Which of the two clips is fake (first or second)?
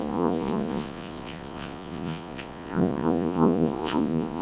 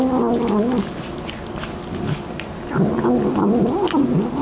first